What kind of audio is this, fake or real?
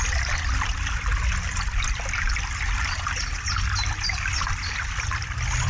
real